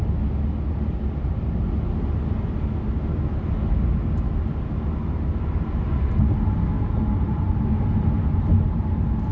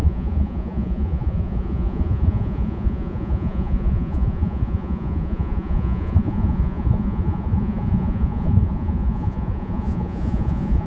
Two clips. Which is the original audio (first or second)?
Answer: first